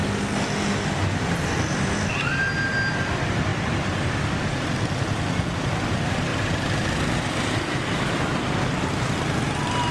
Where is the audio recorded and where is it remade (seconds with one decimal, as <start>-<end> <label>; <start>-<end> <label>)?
0.0-9.9 recorded